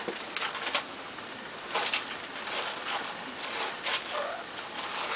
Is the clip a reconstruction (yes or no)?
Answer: no